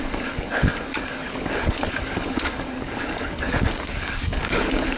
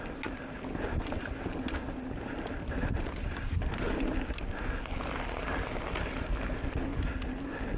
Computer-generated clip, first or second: first